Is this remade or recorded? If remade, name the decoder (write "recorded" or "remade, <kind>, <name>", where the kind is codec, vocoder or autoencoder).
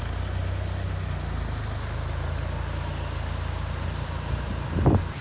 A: recorded